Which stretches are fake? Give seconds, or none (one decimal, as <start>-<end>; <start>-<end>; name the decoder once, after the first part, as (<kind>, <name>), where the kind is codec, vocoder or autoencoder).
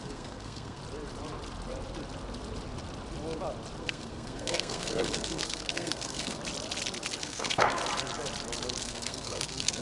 0.0-0.8 (codec, SNAC); 3.8-6.4; 7.2-7.8; 8.8-9.8